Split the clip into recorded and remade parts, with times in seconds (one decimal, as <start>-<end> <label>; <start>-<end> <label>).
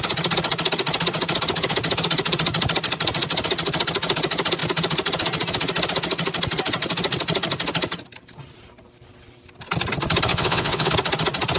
0.0-10.3 recorded; 10.3-10.9 remade; 10.9-11.6 recorded